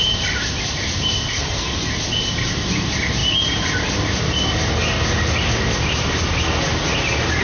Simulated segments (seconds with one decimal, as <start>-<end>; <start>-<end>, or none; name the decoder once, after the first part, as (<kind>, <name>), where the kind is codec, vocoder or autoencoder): 1.3-1.9 (codec, SNAC)

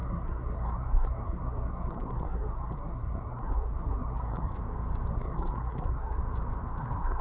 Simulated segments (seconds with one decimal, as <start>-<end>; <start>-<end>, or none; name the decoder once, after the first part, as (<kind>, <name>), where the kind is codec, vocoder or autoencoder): 0.0-4.5 (codec, SNAC); 5.1-6.2; 6.8-7.2

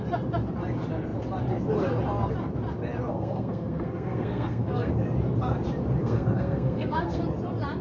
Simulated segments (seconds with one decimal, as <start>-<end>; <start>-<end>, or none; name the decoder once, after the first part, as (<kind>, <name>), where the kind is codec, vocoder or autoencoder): 3.1-4.9 (codec, SNAC); 6.0-7.2